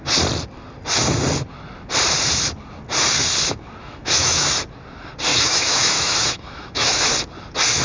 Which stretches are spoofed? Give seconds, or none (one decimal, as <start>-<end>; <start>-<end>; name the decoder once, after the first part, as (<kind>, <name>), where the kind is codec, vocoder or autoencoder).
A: 3.8-4.5 (autoencoder, DAC-VAE); 5.3-7.0